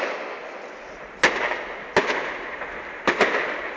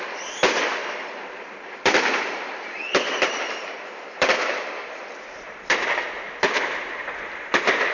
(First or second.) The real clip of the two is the first